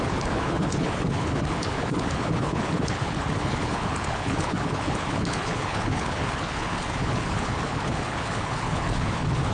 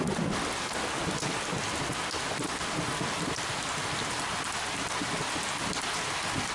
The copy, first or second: first